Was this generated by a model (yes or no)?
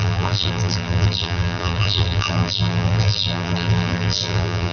yes